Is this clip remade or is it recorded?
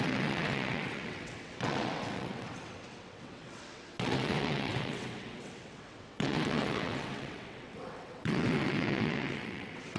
remade